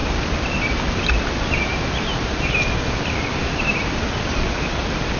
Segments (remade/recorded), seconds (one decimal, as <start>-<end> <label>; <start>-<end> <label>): 0.0-5.2 recorded